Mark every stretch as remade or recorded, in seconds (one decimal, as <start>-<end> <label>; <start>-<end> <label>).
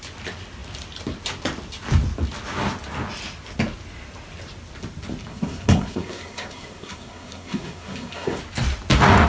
0.0-5.3 recorded; 5.3-8.4 remade; 8.4-9.3 recorded